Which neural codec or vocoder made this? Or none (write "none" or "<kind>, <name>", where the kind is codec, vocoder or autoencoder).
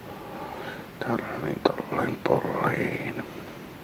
none